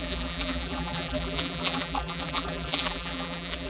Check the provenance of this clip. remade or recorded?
remade